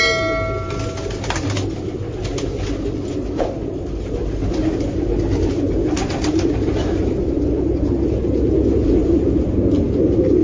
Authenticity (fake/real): real